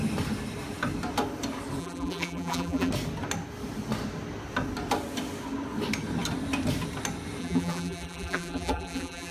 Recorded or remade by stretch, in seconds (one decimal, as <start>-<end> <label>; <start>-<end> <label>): 0.0-1.8 recorded; 1.8-2.9 remade; 2.9-7.4 recorded; 7.4-9.3 remade